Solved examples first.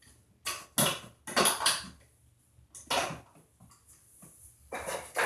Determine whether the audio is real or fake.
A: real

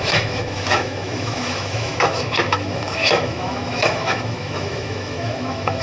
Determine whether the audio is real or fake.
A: fake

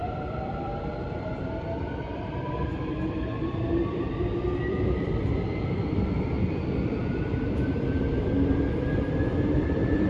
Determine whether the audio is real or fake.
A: fake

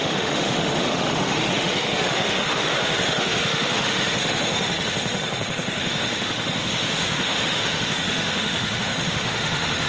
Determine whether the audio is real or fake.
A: fake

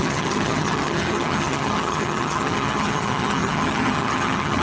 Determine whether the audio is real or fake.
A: fake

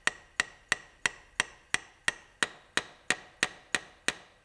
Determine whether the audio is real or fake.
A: real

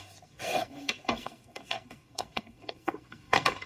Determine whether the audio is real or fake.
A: fake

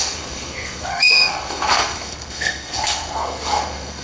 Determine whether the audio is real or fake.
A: fake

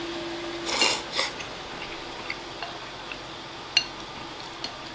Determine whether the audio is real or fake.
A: real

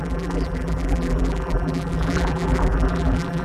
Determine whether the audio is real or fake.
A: fake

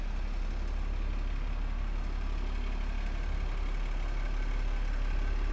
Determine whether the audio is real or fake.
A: real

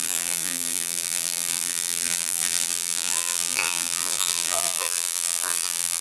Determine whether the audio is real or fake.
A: fake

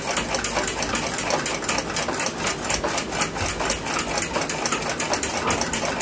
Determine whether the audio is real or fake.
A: real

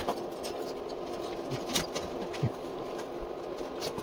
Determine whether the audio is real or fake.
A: real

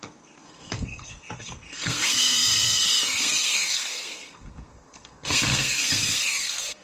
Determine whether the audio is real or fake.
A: fake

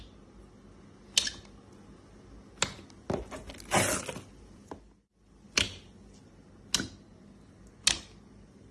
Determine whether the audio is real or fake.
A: real